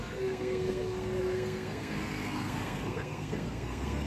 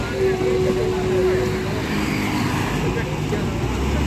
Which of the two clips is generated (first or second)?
first